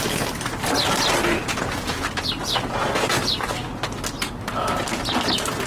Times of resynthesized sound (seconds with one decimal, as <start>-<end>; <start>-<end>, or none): 1.4-2.2